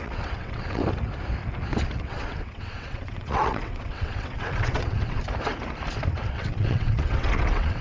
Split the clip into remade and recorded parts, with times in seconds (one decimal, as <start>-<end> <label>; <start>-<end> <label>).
0.0-0.8 remade; 0.8-2.0 recorded; 2.0-5.2 remade; 5.2-6.3 recorded; 6.3-7.8 remade